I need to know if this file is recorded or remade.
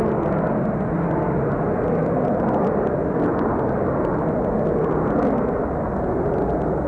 recorded